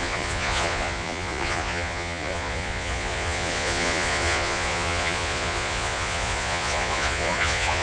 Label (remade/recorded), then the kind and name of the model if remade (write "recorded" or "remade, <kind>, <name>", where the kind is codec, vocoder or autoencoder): remade, vocoder, Vocos